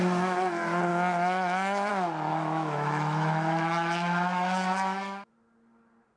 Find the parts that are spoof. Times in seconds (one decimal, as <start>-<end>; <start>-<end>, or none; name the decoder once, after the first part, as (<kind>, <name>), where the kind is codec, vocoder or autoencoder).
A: 0.9-1.9 (autoencoder, DAC-VAE); 2.3-5.3